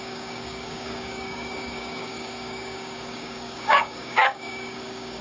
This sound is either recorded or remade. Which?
remade